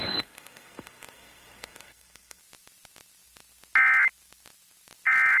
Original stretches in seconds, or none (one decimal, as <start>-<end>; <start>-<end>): 2.4-5.4